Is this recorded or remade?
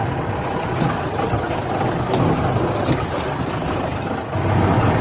recorded